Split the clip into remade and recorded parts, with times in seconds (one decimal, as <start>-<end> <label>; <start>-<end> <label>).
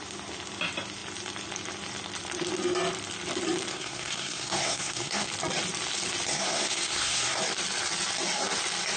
0.0-3.7 recorded; 3.7-5.3 remade; 5.3-6.3 recorded; 6.3-7.4 remade; 7.4-9.0 recorded